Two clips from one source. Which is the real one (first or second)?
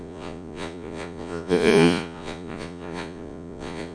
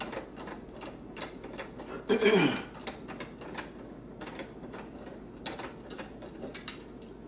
second